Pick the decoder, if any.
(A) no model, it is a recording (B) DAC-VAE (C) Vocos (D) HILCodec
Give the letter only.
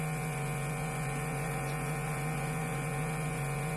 C